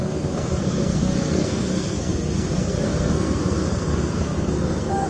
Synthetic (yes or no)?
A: yes